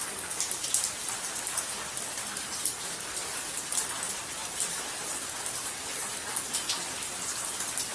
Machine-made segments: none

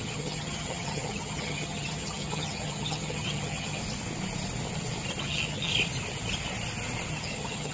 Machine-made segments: 0.0-3.8 (vocoder, HiFi-GAN); 5.2-5.7; 7.1-7.7